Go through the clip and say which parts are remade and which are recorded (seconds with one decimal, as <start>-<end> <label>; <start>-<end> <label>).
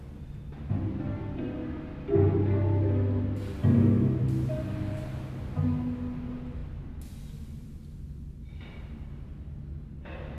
0.0-10.4 recorded